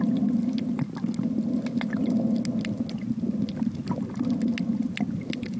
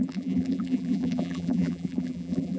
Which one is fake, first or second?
second